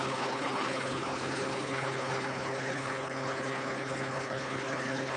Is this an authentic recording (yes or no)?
no